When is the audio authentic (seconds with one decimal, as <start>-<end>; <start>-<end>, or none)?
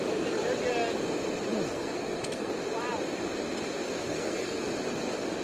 0.0-1.7; 2.5-4.0; 4.6-5.4